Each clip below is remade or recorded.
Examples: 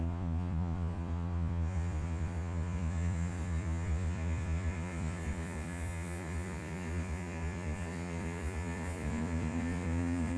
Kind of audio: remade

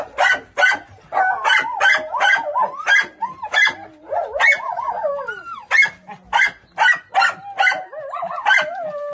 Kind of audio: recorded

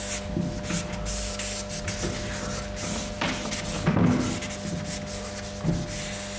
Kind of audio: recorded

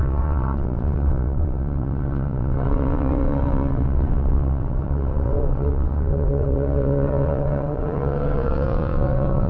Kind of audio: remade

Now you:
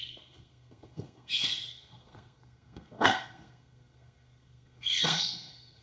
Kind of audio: remade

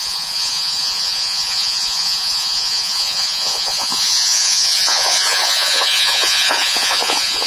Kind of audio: remade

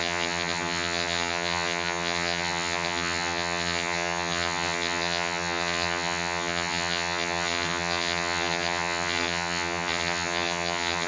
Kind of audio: remade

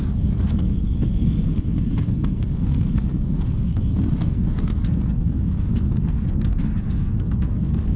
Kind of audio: remade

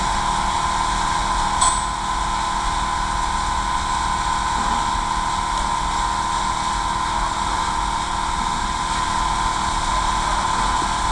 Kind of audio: recorded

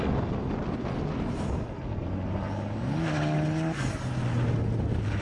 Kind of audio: recorded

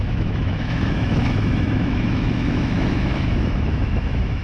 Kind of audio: remade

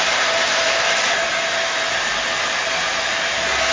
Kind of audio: remade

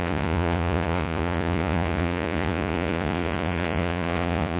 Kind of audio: remade